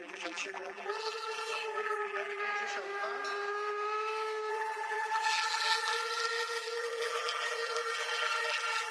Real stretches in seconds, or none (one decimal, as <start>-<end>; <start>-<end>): 2.4-4.5